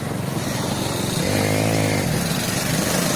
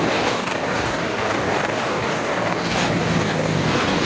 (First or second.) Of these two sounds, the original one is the first